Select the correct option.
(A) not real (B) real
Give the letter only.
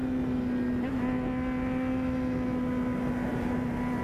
B